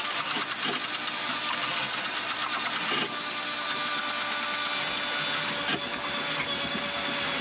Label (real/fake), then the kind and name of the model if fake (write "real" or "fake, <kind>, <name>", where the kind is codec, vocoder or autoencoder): real